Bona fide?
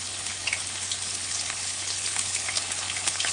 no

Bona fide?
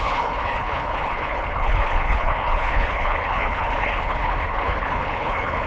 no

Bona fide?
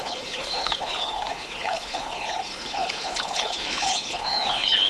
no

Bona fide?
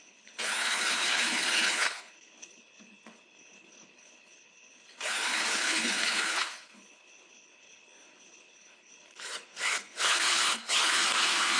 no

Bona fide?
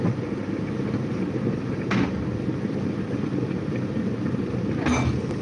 yes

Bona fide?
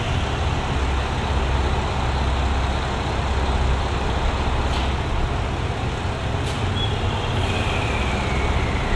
yes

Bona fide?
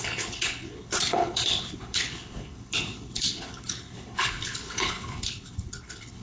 no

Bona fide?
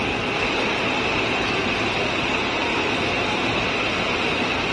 yes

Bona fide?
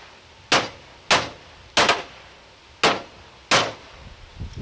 yes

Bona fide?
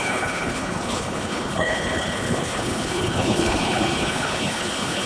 no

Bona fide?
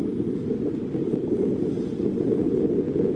yes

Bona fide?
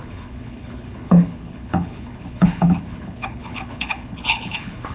no